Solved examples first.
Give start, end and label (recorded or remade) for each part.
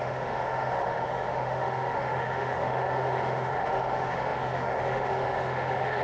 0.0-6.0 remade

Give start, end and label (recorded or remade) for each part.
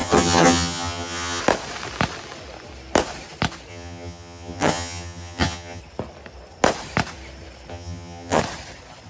0.0-1.4 remade; 1.4-3.7 recorded; 3.7-5.8 remade; 5.8-7.7 recorded; 7.7-8.4 remade; 8.4-9.1 recorded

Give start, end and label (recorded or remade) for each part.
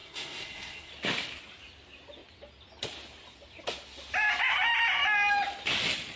0.0-0.9 remade; 0.9-6.2 recorded